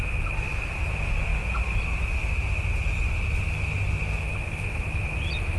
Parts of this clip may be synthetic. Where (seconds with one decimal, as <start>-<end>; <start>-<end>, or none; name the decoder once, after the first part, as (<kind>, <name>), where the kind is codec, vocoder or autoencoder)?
none